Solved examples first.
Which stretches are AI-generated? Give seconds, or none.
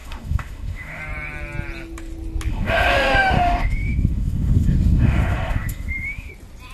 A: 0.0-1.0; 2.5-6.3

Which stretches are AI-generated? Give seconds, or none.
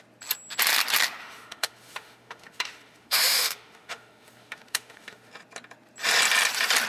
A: 1.2-5.3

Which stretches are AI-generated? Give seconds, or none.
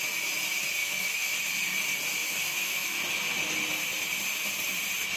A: 0.8-1.4; 2.2-3.0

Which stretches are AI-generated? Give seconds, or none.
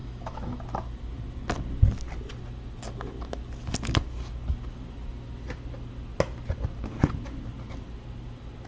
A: 0.0-0.6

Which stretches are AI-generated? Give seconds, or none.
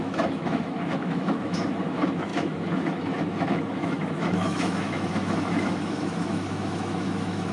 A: 0.0-7.5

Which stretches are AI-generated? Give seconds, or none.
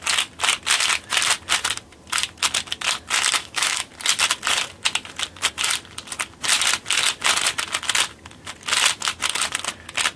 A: 3.4-3.9